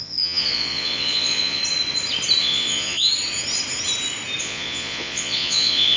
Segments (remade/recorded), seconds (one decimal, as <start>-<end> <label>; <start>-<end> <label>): 0.0-1.6 remade; 1.6-2.4 recorded; 2.4-3.1 remade; 3.1-4.4 recorded; 4.4-6.0 remade